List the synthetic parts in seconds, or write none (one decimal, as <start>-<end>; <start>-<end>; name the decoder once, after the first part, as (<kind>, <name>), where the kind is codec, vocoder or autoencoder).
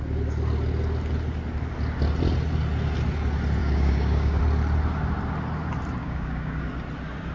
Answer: 3.6-4.4 (codec, DAC); 6.0-6.6